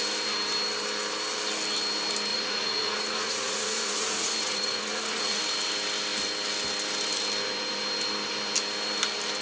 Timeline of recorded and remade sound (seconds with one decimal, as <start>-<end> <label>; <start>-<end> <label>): 0.0-2.3 recorded; 2.3-5.4 remade; 5.4-9.4 recorded